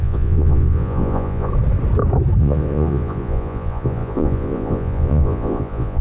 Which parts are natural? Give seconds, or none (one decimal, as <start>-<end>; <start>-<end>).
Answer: 1.5-2.4